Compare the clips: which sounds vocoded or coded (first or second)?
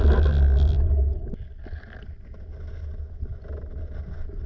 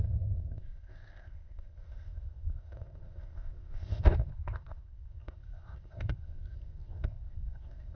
second